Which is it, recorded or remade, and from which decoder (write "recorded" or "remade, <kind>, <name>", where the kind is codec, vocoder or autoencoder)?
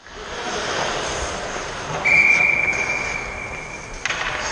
recorded